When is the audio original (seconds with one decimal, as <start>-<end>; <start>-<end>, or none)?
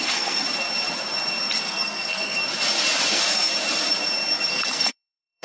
0.4-1.6; 2.4-3.1; 3.5-4.5